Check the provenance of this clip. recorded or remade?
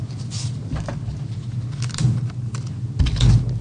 recorded